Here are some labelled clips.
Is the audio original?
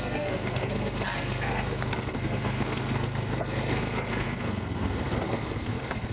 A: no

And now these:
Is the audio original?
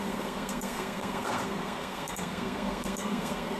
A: no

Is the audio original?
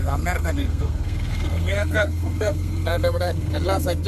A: no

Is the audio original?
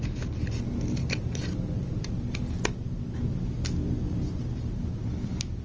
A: yes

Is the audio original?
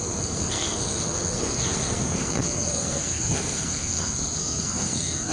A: no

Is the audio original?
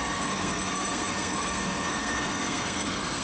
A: no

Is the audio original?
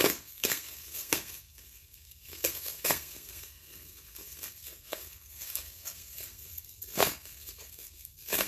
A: no